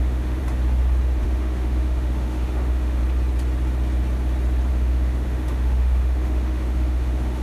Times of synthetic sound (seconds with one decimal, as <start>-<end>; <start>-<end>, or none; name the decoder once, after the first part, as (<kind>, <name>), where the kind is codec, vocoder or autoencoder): 0.0-0.4 (autoencoder, DAC-VAE); 1.2-3.0; 4.7-7.4